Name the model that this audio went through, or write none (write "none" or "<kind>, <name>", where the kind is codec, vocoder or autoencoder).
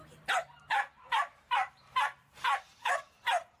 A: vocoder, BigVGAN v2